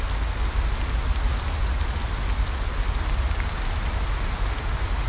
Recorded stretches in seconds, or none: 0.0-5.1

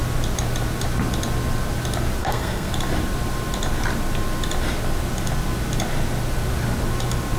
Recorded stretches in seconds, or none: 0.0-2.2; 2.7-7.4

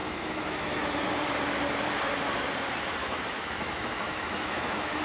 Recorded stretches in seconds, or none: 1.0-3.0

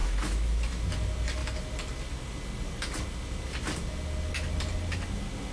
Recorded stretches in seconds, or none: 0.8-5.5